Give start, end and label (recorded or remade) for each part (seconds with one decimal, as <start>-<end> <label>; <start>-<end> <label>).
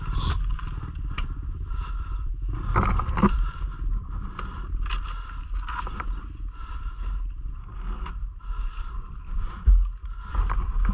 0.0-7.6 recorded; 7.6-8.1 remade; 8.1-10.9 recorded